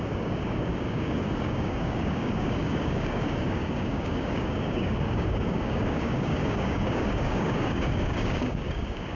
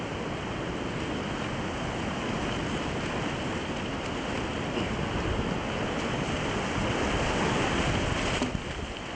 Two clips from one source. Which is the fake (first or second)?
first